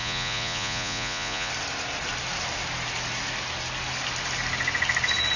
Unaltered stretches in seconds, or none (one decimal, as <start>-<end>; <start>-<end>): 1.5-5.4